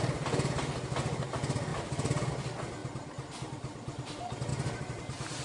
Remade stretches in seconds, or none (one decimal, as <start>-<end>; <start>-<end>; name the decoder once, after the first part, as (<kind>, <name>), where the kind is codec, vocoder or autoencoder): 2.8-4.1 (vocoder, BigVGAN v2); 4.5-5.4